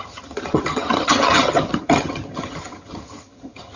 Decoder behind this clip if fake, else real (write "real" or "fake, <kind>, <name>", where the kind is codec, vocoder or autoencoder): fake, vocoder, HiFi-GAN